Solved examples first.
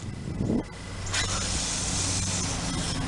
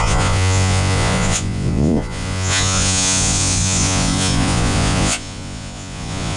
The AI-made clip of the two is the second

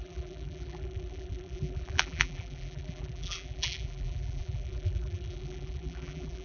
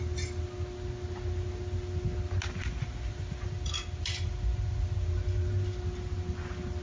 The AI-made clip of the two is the first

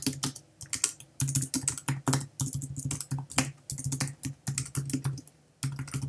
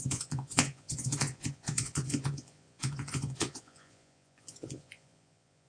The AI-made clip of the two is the second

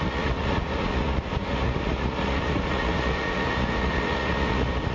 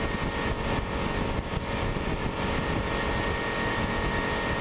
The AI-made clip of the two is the first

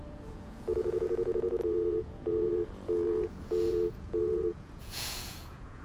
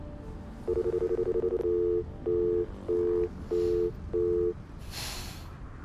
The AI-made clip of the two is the first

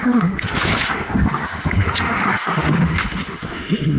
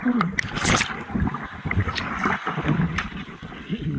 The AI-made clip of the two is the first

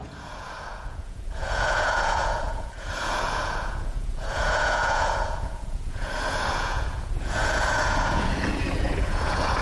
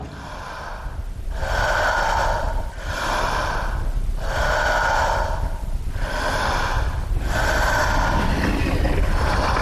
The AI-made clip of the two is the first